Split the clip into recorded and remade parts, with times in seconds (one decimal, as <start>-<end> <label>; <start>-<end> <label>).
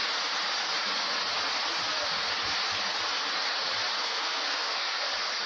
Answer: 0.0-4.0 recorded; 4.0-5.1 remade; 5.1-5.5 recorded